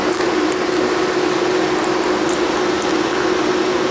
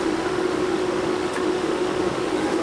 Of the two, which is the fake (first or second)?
second